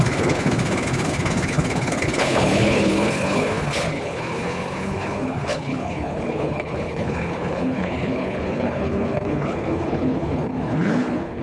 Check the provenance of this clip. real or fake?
fake